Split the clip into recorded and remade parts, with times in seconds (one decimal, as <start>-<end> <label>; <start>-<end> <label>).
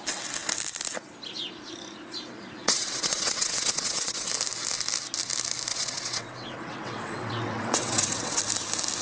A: 0.0-2.6 recorded; 2.6-4.3 remade; 4.3-5.7 recorded; 5.7-8.4 remade; 8.4-9.0 recorded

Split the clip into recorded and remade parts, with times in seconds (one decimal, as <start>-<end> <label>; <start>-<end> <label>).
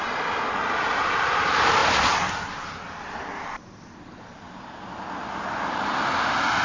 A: 0.0-6.6 recorded